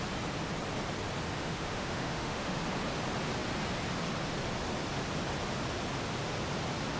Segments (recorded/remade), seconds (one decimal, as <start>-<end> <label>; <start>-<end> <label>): 0.0-1.4 recorded; 1.4-2.6 remade; 2.6-7.0 recorded